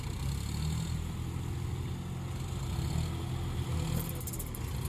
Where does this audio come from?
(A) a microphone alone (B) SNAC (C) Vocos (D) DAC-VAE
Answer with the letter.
A